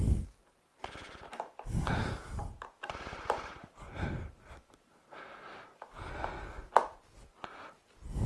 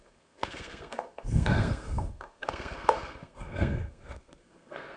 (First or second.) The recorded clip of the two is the first